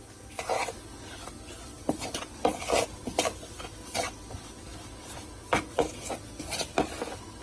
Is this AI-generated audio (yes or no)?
no